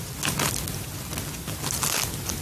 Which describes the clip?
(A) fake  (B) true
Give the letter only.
B